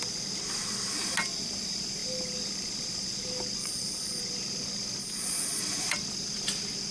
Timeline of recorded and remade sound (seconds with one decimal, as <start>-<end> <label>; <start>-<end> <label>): 0.0-3.6 recorded; 3.6-4.2 remade; 4.2-5.0 recorded; 5.0-5.6 remade; 5.6-6.9 recorded